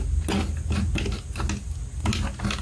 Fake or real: real